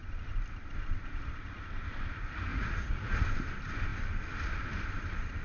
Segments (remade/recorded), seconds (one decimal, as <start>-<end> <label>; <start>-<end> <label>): 0.0-2.5 recorded; 2.5-3.2 remade; 3.2-5.4 recorded